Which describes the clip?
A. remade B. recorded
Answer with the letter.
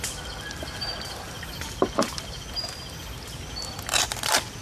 B